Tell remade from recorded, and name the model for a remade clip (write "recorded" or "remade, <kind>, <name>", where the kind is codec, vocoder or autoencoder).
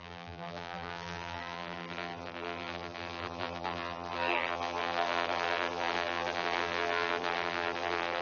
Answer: remade, vocoder, BigVGAN v2